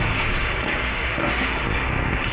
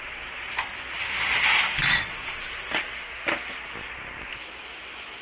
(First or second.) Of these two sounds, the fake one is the first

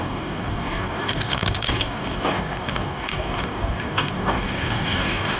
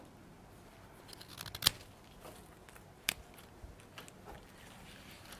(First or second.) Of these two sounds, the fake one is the first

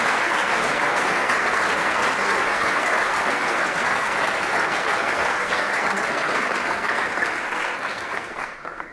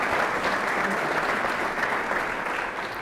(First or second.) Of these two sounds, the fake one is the first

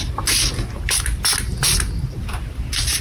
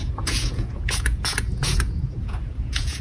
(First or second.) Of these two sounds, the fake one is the second